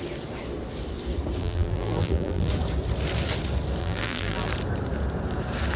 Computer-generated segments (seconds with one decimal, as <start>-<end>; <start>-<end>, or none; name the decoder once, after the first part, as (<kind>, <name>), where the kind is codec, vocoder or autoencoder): 1.4-2.5 (vocoder, BigVGAN v2); 3.8-4.5